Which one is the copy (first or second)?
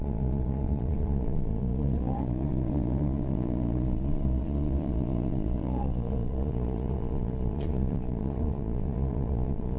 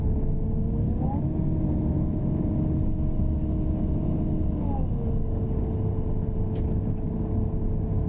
first